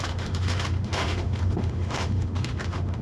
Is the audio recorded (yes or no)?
no